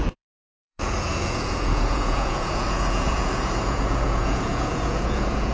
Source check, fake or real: fake